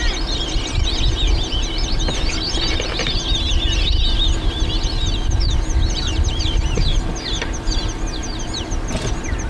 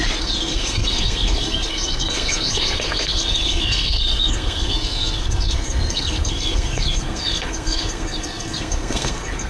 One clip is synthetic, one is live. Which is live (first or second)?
first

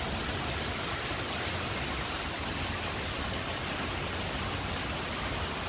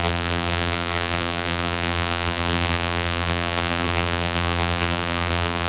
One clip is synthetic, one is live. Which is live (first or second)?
first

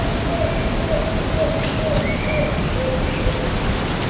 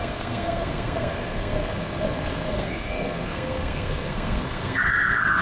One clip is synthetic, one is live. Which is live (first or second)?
first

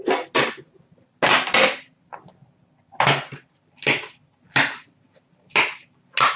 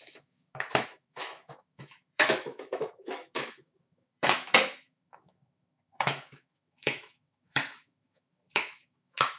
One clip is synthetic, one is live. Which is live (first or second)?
first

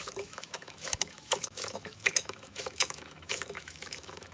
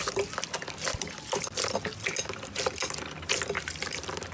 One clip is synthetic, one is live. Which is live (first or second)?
second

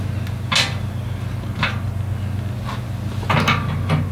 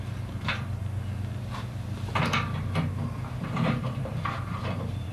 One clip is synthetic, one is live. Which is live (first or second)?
first